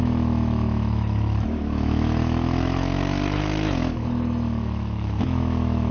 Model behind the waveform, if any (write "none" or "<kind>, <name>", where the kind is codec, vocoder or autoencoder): autoencoder, DAC-VAE